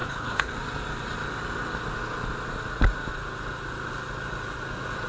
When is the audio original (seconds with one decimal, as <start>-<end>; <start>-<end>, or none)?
0.5-5.1